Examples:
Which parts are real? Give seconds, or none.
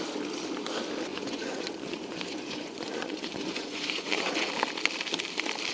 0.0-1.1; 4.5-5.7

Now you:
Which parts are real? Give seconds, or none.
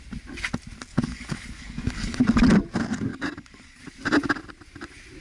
0.0-0.9; 2.2-3.1; 3.8-5.2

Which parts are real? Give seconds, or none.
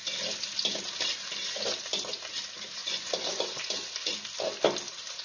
0.0-2.8; 3.6-5.2